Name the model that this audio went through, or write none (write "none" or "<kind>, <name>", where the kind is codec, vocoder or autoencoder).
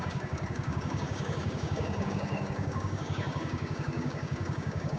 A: codec, DAC